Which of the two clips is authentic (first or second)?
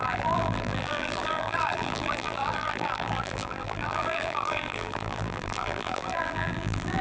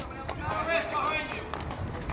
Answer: second